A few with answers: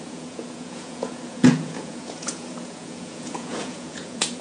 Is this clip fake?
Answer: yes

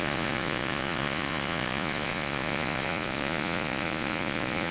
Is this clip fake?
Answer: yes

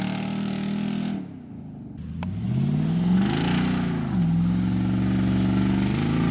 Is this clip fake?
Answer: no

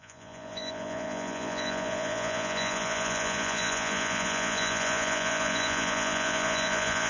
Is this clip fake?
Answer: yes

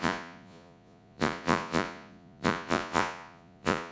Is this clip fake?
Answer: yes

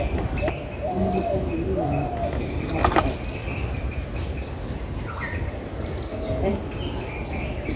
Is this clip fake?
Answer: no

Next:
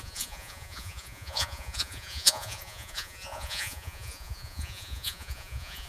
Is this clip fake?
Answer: yes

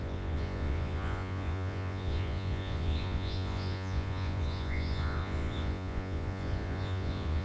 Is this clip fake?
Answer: yes